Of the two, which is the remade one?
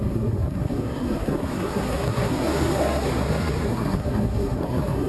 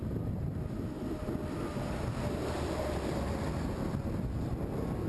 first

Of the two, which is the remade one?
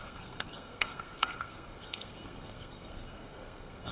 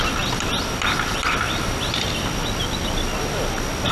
first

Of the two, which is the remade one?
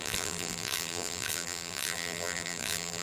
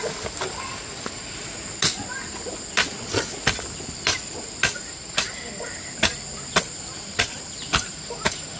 first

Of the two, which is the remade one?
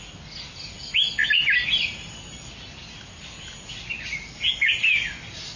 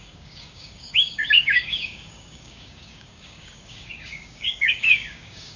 second